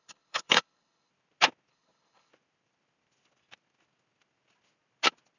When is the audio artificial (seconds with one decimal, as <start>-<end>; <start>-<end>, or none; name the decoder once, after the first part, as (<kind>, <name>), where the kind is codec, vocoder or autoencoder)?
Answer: 0.0-1.1 (codec, HILCodec); 1.7-2.3